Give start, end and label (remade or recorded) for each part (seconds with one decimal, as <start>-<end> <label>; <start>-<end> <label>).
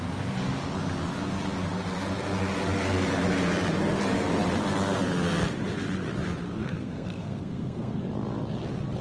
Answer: 0.0-6.6 recorded; 6.6-8.0 remade; 8.0-9.0 recorded